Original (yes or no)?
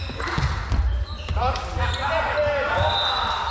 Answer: yes